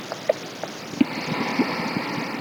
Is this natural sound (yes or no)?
yes